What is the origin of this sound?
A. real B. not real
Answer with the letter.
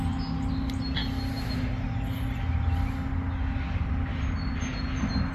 A